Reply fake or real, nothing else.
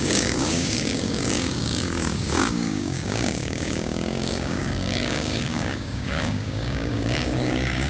fake